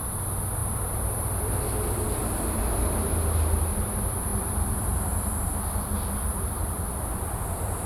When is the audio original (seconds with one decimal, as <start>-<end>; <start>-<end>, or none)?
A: 0.0-0.6; 1.5-4.3; 6.9-7.9